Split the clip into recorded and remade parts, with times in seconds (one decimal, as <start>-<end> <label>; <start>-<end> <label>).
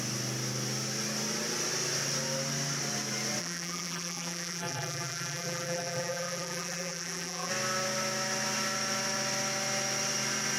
0.0-3.4 recorded; 3.4-7.5 remade; 7.5-10.6 recorded